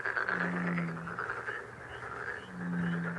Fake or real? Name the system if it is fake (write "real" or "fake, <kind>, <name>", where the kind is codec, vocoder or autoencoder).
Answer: real